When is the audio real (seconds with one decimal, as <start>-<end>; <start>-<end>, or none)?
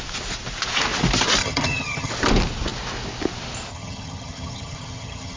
0.0-1.4; 2.1-3.7